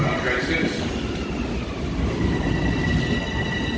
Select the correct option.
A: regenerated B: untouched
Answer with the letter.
B